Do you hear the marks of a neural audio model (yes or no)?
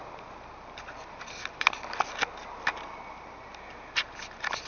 no